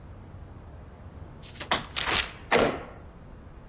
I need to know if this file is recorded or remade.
recorded